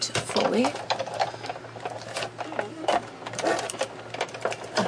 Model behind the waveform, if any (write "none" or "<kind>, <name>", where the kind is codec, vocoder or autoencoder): none